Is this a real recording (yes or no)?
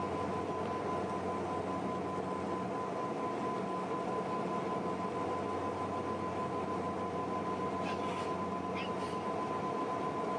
yes